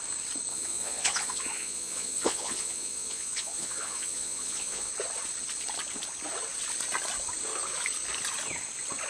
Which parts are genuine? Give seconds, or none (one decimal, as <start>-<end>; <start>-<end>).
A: 0.0-0.5; 4.9-9.1